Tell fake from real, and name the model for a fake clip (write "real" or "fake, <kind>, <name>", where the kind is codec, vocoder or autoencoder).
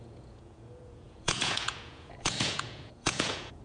fake, vocoder, Vocos